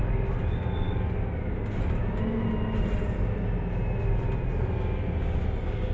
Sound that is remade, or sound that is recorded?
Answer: recorded